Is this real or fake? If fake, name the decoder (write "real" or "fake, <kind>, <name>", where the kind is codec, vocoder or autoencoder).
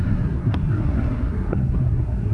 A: fake, codec, SNAC